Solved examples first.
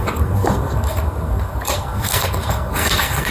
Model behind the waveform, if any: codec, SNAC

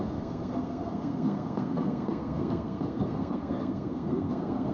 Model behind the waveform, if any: codec, SNAC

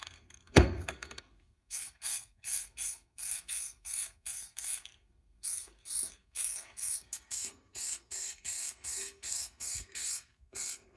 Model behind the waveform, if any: codec, SNAC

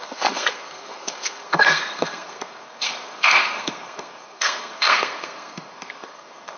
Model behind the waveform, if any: codec, SNAC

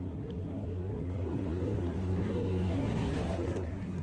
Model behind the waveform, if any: codec, SNAC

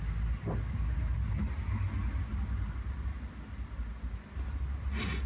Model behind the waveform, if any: none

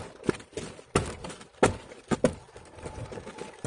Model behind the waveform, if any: none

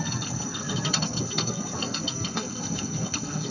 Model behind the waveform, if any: codec, SNAC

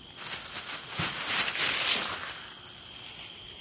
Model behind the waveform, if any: none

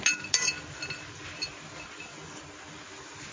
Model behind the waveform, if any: none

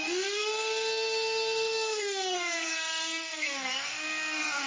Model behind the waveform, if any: codec, SNAC